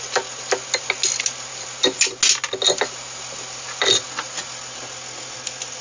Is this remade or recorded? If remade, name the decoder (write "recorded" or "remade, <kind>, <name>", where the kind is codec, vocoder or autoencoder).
recorded